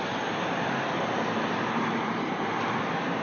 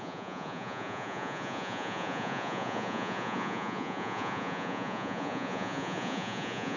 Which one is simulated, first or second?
second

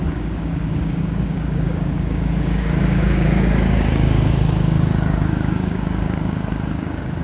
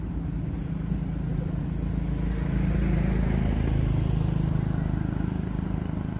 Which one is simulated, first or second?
first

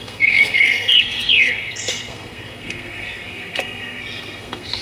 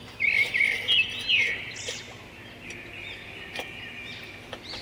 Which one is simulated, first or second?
first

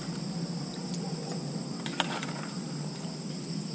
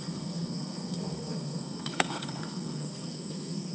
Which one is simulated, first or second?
second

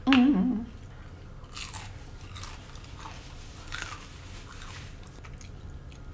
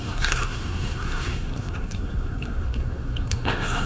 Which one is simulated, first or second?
second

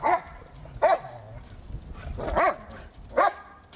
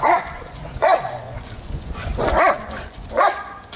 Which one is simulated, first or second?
second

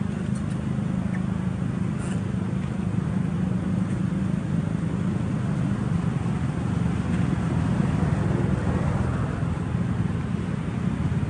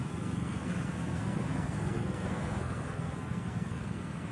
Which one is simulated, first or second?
second